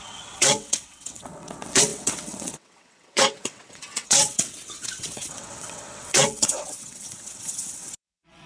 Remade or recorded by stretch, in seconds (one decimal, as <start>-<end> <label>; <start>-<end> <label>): 0.0-8.5 remade